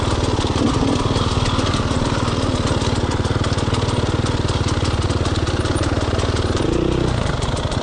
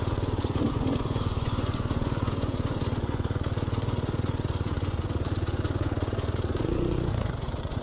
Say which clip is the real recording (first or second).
first